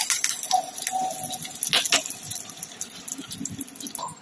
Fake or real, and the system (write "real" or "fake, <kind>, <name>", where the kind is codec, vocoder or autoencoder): real